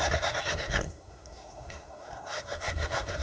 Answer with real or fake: fake